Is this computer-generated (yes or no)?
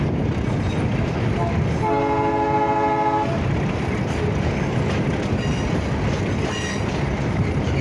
no